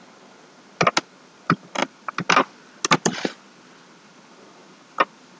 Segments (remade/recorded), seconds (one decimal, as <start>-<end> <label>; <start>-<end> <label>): 0.0-5.4 recorded